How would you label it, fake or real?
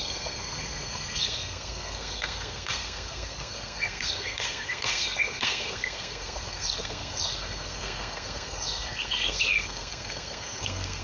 fake